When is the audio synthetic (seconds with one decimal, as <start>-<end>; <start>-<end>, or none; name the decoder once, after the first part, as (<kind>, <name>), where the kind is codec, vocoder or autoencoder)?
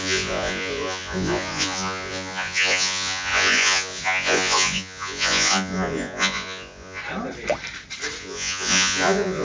0.0-7.0 (vocoder, Vocos); 8.2-9.4